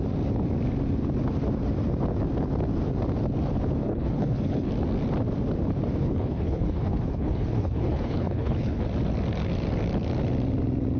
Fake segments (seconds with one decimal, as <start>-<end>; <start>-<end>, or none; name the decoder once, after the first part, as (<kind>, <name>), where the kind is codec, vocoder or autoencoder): 3.8-4.7 (codec, HILCodec); 6.0-8.8